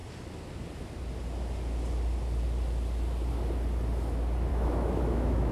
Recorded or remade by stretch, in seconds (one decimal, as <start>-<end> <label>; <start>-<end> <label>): 0.0-4.5 recorded; 4.5-5.5 remade